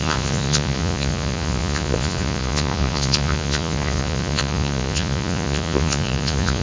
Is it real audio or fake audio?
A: fake